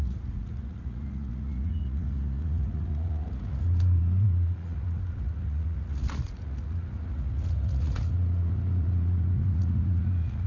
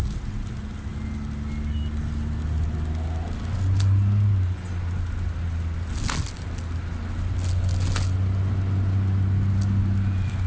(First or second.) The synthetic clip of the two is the first